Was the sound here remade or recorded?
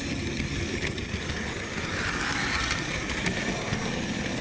recorded